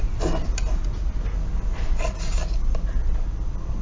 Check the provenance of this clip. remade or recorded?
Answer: recorded